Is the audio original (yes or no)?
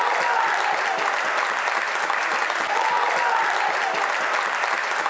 yes